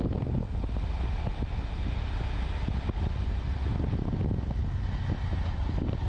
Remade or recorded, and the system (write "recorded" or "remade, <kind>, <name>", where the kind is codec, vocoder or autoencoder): recorded